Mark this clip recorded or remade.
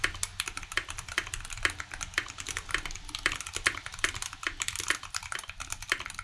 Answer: recorded